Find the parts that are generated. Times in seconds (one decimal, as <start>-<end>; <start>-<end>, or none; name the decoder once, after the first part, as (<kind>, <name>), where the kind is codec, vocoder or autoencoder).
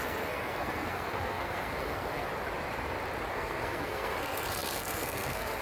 0.0-2.3 (codec, SNAC); 3.3-5.6